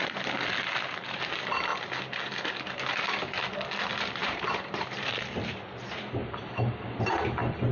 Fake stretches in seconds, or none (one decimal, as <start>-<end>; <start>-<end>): 4.2-5.1; 6.2-7.1